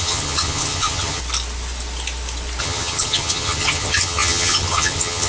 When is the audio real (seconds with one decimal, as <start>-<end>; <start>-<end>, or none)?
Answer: 1.2-2.6